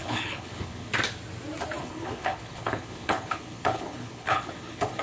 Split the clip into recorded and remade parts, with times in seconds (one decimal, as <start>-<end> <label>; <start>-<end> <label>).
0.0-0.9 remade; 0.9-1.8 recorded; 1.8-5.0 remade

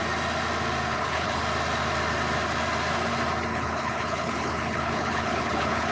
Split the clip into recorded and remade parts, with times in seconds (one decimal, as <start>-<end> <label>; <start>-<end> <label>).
0.0-0.9 recorded; 0.9-1.4 remade; 1.4-3.5 recorded; 3.5-5.9 remade

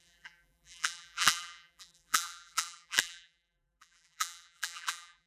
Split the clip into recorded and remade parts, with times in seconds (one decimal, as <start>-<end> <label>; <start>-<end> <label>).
0.0-5.3 remade